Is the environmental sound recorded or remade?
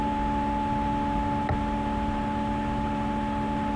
recorded